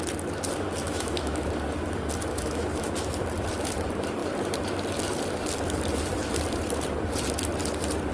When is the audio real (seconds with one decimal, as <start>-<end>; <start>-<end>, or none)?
0.0-0.8; 1.5-2.3; 2.9-8.1